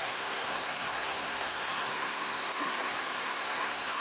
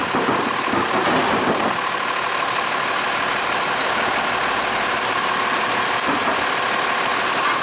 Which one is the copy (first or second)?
first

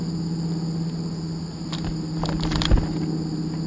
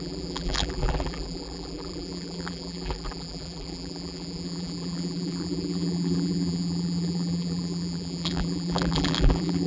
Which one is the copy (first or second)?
second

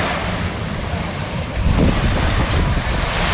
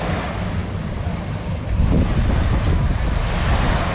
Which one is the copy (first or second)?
first